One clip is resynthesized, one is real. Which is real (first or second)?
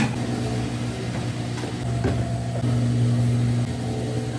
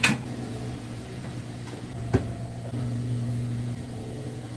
first